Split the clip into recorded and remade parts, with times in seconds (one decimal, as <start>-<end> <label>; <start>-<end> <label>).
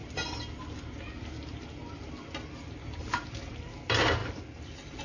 0.0-5.0 recorded